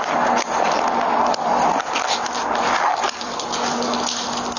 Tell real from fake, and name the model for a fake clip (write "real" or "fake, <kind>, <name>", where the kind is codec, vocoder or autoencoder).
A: real